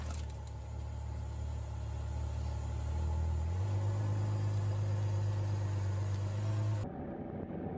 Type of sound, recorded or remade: recorded